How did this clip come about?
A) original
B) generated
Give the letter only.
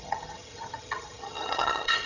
B